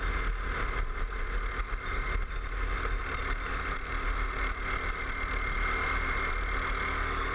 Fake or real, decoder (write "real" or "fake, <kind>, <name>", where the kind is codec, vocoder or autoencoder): real